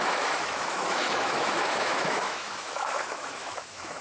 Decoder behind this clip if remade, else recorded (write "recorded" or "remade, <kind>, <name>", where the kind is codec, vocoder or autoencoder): remade, autoencoder, DAC-VAE